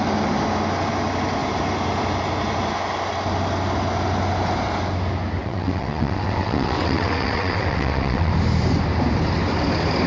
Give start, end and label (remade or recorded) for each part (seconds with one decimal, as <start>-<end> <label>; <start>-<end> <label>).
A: 0.0-5.4 recorded; 5.4-8.3 remade; 8.3-10.1 recorded